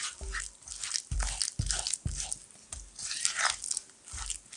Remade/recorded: recorded